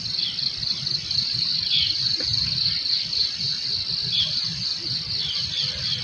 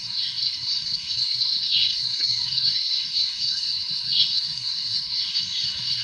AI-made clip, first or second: second